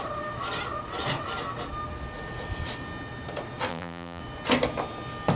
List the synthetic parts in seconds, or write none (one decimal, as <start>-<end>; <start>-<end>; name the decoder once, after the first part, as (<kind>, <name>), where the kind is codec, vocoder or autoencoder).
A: 3.7-4.2 (vocoder, BigVGAN v2)